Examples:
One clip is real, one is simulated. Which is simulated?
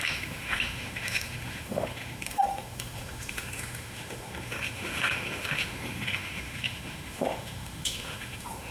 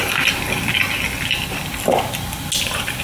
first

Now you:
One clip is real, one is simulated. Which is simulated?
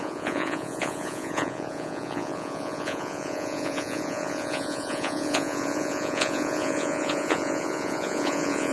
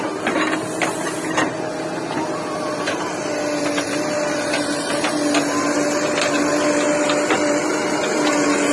first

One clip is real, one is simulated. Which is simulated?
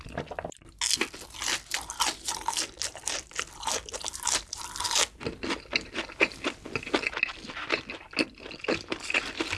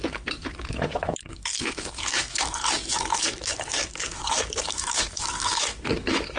second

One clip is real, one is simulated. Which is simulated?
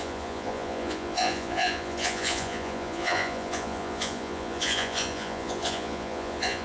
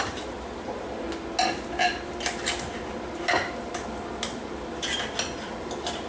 first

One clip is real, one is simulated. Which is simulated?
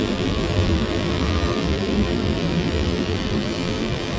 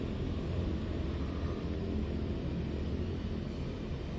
first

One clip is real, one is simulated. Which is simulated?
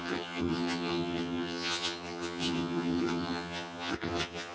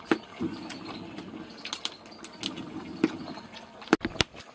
first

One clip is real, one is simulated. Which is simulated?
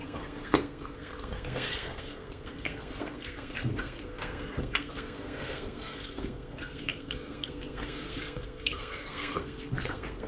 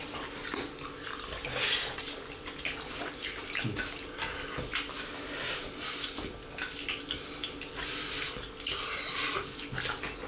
first